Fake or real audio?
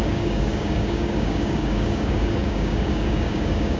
fake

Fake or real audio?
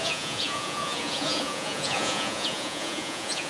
fake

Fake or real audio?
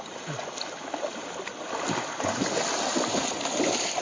real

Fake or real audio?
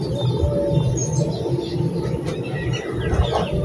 real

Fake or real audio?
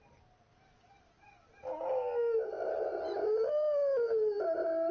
real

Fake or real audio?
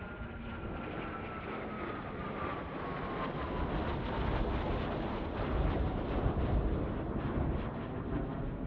real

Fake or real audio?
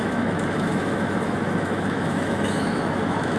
fake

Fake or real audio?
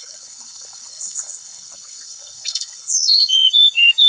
fake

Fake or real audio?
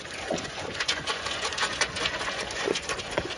fake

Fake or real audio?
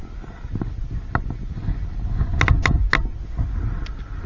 real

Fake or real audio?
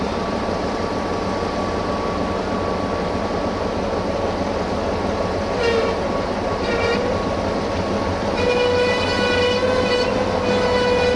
real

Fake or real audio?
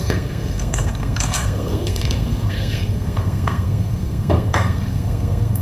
fake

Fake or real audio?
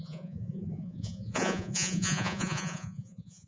fake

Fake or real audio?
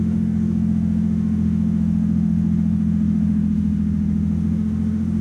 fake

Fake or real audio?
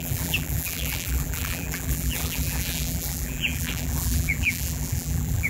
fake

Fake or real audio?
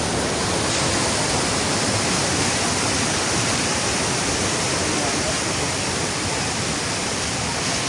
real